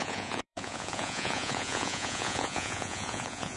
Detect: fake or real fake